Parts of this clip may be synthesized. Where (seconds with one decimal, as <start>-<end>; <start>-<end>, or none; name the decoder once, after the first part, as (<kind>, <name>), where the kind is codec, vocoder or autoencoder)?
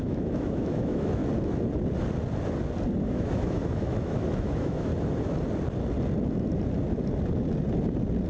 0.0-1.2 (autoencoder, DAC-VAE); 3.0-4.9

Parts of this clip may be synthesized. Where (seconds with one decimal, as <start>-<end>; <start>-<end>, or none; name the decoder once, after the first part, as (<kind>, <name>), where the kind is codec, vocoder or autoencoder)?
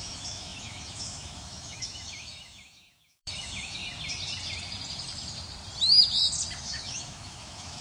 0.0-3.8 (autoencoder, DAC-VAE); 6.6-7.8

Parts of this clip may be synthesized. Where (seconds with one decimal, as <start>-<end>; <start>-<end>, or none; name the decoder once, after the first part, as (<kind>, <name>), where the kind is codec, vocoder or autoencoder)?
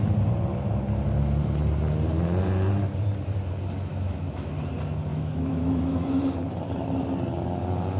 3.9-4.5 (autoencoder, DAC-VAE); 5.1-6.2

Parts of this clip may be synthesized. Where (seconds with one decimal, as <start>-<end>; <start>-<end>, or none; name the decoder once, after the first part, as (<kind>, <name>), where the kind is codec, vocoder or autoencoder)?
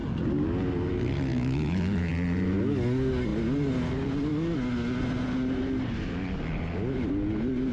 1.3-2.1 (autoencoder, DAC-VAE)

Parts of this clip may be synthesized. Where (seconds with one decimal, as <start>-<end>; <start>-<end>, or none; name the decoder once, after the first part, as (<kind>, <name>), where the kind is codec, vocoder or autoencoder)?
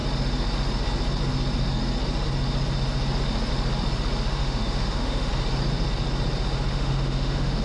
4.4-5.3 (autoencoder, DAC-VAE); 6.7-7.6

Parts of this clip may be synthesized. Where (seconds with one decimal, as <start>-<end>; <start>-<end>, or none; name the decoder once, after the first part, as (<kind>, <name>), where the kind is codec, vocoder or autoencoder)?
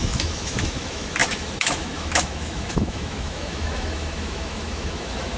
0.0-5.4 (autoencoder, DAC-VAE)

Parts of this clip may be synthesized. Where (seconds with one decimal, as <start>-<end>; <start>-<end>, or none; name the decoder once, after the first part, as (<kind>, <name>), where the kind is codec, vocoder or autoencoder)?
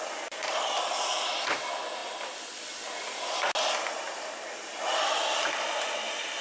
none